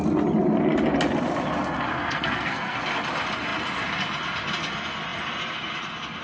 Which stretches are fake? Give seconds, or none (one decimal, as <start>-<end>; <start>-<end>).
1.9-2.8